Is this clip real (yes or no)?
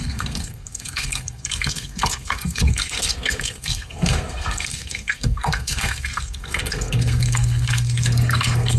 no